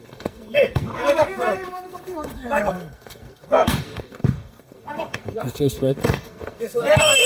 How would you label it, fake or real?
fake